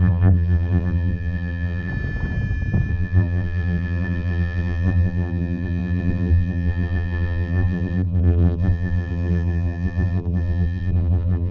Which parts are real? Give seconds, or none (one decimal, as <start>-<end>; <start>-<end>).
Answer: 1.9-2.9